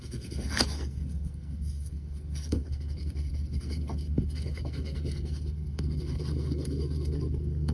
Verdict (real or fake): fake